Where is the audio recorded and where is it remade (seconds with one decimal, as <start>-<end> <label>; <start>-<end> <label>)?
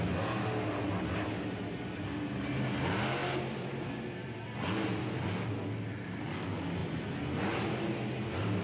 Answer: 0.0-8.6 recorded